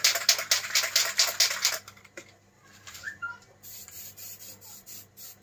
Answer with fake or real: real